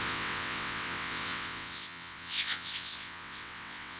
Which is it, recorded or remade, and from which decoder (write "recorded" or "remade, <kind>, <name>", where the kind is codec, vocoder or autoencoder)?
remade, vocoder, WaveNeXt